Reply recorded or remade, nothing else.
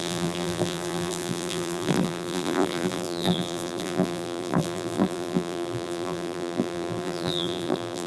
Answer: remade